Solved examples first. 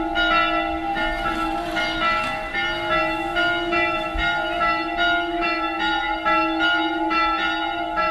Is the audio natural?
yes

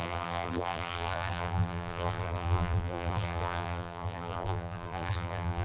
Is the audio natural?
no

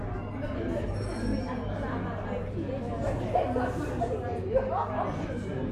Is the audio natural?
yes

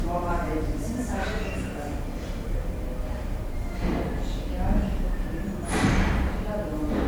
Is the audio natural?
no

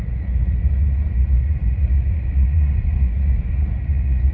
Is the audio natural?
no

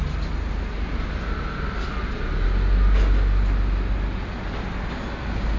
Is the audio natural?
yes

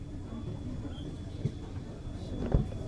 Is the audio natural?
no